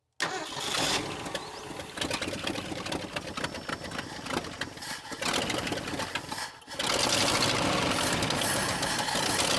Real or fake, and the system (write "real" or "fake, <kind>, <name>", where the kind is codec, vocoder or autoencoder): real